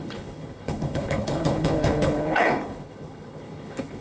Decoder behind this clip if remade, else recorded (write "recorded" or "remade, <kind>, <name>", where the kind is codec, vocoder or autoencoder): remade, codec, HILCodec